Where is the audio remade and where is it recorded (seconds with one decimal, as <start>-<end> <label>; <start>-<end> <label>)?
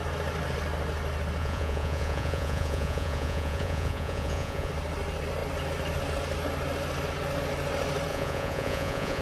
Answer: 0.0-1.4 recorded; 1.4-4.7 remade; 4.7-8.1 recorded; 8.1-9.2 remade